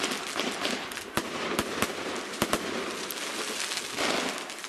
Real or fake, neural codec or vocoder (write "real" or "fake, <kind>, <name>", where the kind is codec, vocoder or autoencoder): real